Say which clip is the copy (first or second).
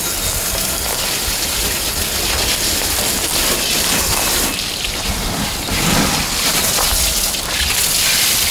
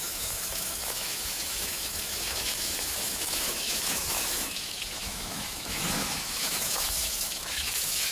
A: second